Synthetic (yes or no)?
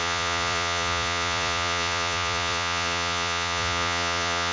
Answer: yes